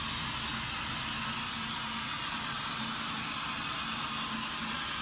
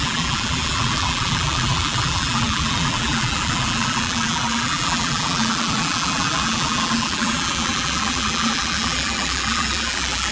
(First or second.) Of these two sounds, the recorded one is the first